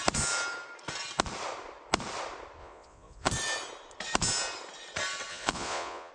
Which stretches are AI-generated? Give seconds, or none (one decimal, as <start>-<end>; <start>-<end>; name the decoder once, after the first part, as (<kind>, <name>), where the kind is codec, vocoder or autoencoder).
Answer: 2.6-3.3 (vocoder, Vocos); 5.3-6.1